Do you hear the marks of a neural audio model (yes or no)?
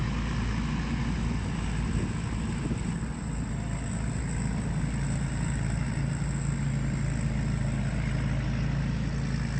no